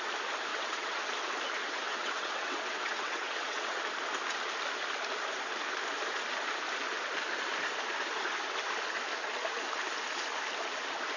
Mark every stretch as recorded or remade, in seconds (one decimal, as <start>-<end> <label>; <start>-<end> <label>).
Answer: 0.0-0.5 recorded; 0.5-1.1 remade; 1.1-1.6 recorded; 1.6-3.8 remade; 3.8-11.2 recorded